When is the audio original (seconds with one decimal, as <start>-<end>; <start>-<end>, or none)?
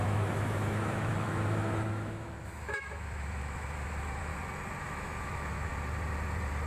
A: 4.3-4.8; 5.7-6.7